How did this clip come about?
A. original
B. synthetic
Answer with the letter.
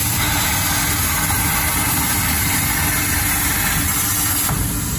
A